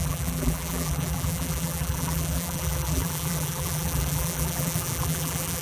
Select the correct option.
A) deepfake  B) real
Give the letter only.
A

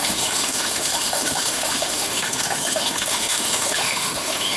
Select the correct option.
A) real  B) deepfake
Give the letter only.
B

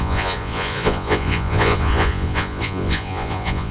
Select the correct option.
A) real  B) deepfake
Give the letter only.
B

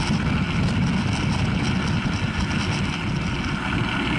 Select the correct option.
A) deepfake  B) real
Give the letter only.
B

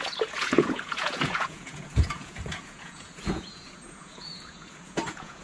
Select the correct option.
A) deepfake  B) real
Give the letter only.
A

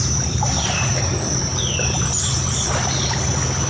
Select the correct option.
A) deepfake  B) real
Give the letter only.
B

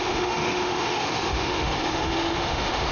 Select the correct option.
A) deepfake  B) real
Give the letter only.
A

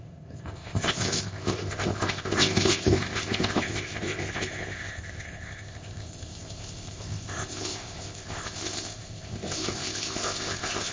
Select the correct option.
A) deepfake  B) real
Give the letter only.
A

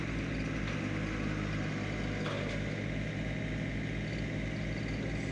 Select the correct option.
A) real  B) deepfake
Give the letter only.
A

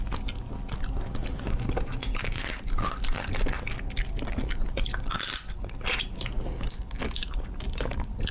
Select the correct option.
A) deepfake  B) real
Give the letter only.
B